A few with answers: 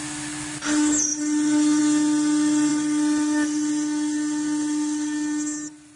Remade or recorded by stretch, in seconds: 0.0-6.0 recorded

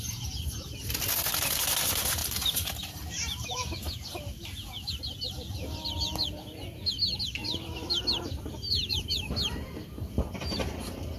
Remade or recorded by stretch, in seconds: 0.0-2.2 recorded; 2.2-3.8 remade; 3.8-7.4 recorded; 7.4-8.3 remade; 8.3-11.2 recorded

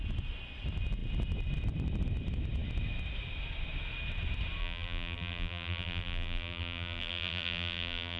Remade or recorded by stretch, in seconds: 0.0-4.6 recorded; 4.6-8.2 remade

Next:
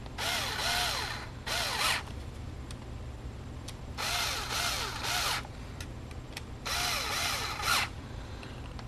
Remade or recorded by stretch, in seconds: 0.0-0.6 remade; 0.6-1.3 recorded; 1.3-8.9 remade

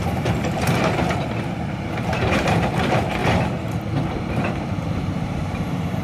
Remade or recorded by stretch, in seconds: 0.0-3.2 remade; 3.2-4.0 recorded; 4.0-6.0 remade

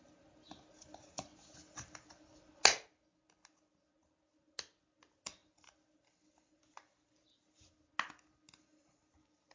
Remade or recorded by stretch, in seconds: 0.0-9.5 recorded